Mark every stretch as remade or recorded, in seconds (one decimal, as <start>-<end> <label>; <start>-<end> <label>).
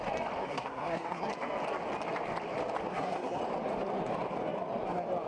0.0-0.4 recorded; 0.4-1.3 remade; 1.3-2.9 recorded; 2.9-3.4 remade; 3.4-5.3 recorded